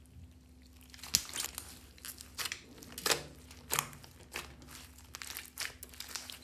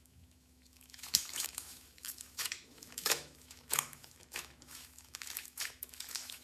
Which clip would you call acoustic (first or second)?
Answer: first